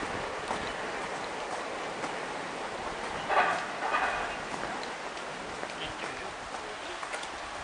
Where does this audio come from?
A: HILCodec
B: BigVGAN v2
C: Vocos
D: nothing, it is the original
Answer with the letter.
D